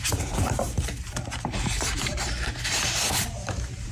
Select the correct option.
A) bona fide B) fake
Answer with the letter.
B